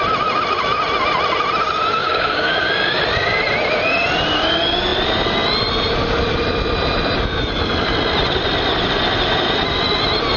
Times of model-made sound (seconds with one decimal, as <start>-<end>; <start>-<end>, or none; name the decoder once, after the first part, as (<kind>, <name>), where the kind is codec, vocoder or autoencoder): 2.0-3.0 (codec, DAC)

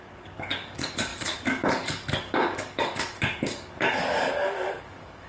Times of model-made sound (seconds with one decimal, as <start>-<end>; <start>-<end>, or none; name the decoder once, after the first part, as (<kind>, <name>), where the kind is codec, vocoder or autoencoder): 0.0-5.3 (codec, DAC)